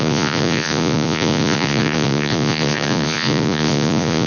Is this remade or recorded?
remade